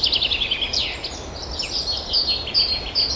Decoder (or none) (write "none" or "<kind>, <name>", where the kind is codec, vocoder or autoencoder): none